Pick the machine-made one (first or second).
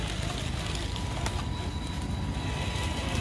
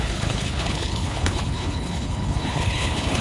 second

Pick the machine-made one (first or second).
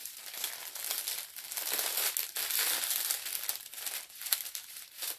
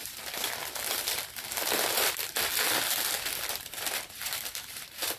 second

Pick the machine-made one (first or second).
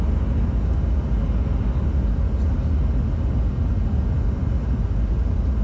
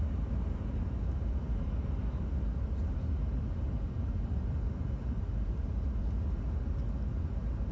second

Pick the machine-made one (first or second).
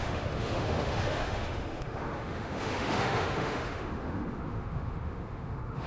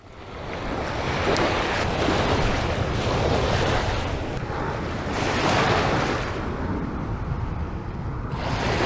first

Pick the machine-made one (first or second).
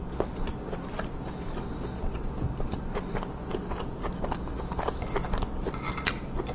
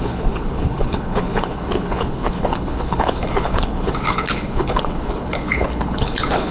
second